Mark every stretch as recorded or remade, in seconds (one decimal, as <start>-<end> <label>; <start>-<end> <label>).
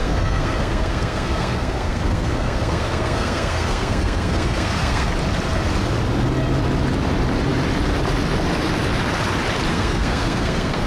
0.0-5.1 remade; 5.1-9.7 recorded; 9.7-10.9 remade